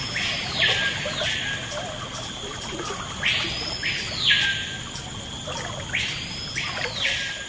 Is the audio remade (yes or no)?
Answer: no